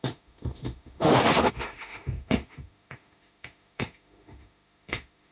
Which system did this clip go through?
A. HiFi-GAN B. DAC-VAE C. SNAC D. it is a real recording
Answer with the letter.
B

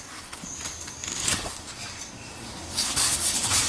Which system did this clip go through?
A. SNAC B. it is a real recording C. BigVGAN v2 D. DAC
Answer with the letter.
D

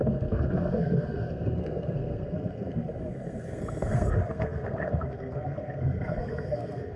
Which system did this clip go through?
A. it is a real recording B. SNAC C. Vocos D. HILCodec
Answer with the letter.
B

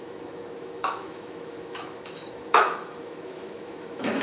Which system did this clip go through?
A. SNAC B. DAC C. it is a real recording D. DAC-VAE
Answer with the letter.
D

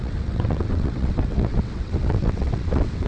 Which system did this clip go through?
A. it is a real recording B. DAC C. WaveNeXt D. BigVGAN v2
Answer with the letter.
C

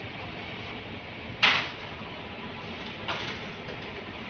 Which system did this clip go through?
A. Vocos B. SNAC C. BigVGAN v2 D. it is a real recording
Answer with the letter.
D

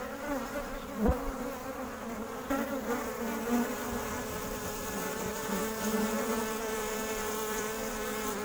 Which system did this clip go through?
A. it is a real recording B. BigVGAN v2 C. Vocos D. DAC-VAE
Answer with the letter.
B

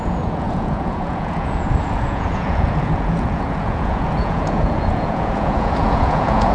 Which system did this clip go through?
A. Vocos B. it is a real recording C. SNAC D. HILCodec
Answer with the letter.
A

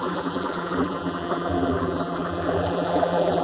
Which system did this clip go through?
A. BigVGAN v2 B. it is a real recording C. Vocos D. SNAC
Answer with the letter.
A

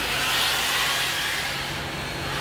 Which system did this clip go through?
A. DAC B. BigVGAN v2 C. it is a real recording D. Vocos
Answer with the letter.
C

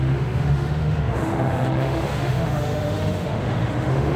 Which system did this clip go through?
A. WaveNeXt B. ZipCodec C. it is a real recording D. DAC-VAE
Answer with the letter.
D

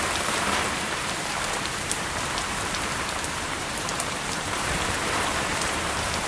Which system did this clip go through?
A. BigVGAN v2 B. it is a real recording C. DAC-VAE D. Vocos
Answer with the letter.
A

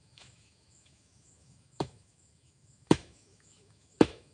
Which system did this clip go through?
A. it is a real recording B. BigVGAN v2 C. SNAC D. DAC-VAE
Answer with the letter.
D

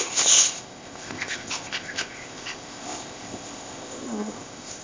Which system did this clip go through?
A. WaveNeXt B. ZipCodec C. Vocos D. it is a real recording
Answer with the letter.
B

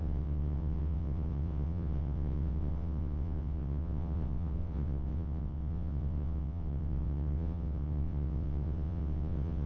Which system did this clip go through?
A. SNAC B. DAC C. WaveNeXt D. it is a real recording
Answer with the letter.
C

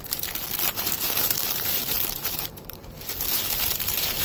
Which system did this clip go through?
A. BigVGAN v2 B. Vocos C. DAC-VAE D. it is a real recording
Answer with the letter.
A